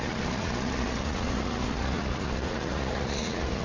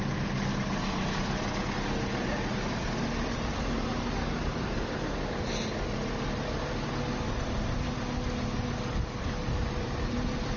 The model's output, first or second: first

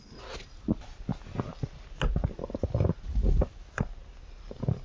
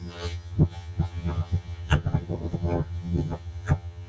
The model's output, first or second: second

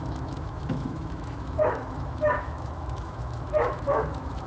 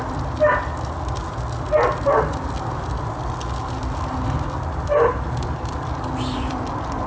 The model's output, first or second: first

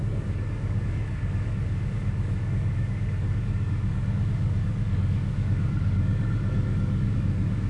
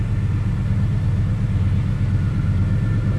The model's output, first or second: first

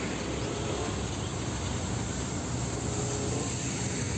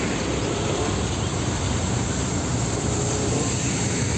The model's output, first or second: second